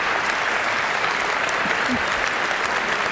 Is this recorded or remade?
remade